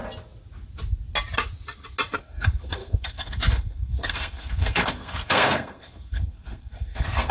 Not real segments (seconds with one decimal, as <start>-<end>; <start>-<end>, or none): 2.2-7.3